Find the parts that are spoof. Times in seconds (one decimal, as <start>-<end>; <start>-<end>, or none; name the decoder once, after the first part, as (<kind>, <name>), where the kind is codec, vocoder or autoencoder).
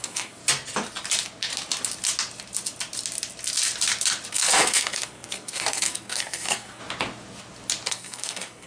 0.0-0.4 (codec, SNAC); 4.3-6.8; 7.9-8.7